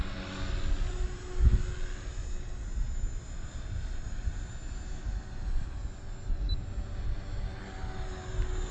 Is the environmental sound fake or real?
real